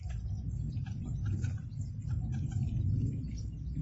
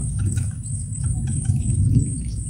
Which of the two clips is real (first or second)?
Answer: first